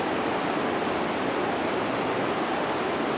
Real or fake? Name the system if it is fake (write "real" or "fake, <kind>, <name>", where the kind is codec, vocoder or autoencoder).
real